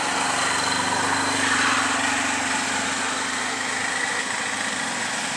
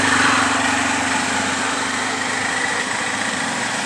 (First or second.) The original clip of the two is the first